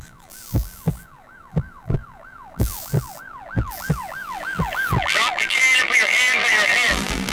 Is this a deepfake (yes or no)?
yes